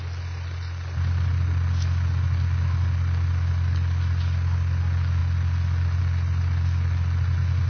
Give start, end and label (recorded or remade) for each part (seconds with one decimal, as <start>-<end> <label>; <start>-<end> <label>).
0.0-7.7 recorded